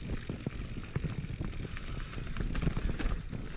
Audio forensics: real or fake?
real